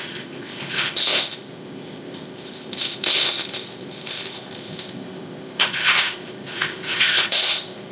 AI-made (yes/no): yes